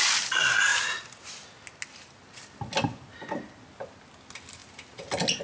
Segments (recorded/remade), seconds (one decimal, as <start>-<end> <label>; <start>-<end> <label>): 0.0-5.4 recorded